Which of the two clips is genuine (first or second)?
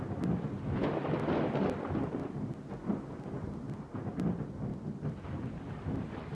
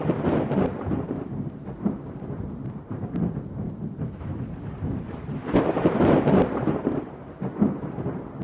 first